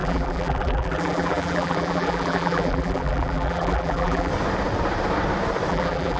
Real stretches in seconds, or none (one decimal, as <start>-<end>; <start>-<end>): 4.3-5.7

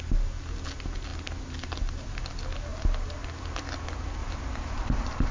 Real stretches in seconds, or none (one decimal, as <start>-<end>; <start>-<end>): 0.0-4.2

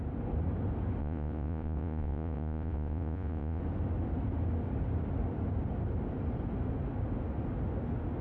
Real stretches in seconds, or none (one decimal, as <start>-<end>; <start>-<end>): 0.0-1.0; 3.6-8.2

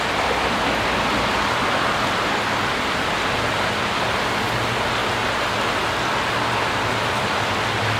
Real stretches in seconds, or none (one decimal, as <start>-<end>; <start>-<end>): 0.0-8.0